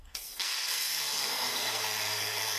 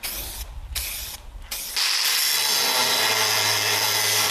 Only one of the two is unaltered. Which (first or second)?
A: second